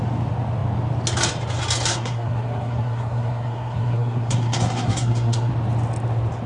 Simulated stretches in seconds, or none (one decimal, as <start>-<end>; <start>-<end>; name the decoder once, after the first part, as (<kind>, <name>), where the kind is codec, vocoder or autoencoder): 1.9-5.5 (codec, SNAC)